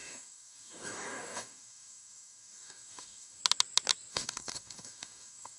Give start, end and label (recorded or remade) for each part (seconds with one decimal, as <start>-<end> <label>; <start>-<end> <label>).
0.0-3.4 remade; 3.4-4.1 recorded; 4.1-5.6 remade